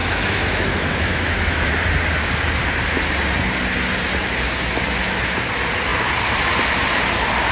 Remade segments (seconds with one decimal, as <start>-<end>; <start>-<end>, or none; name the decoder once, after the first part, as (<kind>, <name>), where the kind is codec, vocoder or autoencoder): 0.0-1.7 (autoencoder, DAC-VAE)